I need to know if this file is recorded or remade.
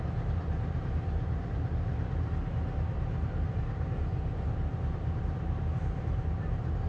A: remade